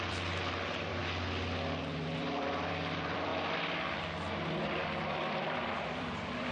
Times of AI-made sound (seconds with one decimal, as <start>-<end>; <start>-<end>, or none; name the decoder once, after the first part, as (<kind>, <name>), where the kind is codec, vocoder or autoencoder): 0.0-1.0 (vocoder, BigVGAN v2); 1.8-3.3; 4.6-6.5